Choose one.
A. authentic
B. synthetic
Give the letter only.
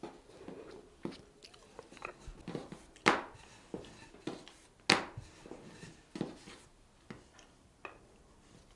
A